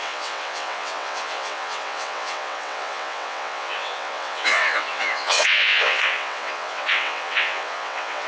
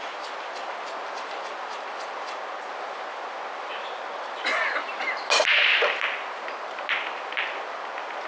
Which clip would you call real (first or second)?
second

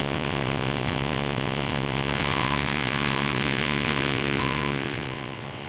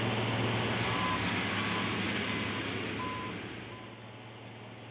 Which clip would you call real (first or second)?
second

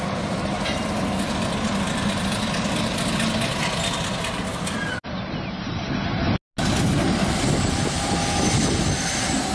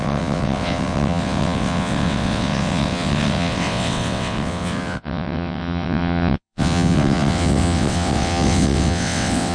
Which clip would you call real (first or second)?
first